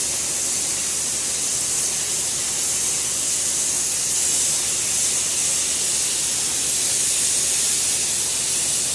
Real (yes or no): yes